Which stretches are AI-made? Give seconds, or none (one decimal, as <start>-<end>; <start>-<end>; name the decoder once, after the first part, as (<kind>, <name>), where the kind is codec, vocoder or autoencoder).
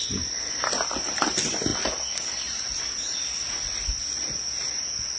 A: none